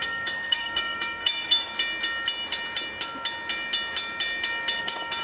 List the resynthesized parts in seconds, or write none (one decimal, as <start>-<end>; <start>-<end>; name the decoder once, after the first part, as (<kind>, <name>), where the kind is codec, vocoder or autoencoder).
0.0-1.7 (codec, DAC); 4.8-5.2